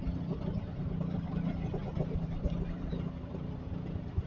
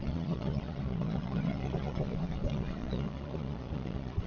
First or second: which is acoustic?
first